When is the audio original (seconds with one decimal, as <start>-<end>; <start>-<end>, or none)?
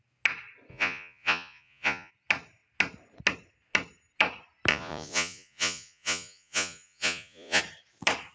0.0-0.7; 2.1-4.7; 7.6-8.3